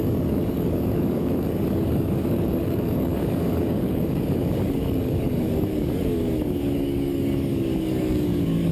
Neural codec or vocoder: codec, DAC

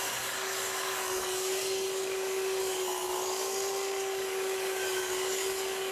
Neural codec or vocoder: codec, DAC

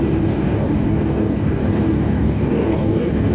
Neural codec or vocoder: codec, DAC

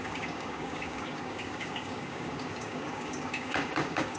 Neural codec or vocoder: codec, DAC